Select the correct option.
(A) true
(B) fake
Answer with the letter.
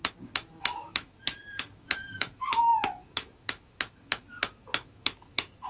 B